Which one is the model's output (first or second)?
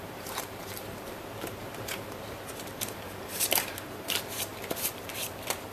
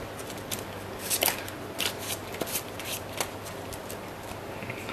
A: first